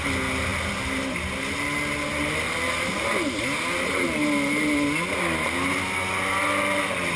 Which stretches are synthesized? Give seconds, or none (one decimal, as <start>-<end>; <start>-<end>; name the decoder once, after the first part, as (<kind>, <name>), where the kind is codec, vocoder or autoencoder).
none